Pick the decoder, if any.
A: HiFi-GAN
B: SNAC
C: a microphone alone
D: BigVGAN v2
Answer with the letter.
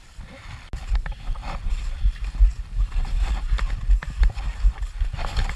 C